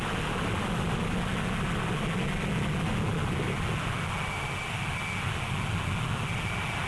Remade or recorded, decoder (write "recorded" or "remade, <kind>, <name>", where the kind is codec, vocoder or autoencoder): recorded